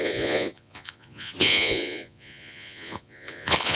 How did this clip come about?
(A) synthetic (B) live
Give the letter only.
A